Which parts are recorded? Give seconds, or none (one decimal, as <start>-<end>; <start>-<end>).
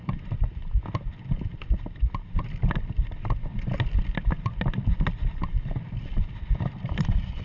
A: 0.0-7.4